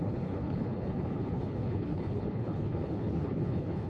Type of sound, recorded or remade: remade